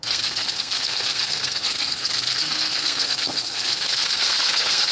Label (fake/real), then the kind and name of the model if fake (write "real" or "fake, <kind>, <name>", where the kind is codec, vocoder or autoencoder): fake, codec, SNAC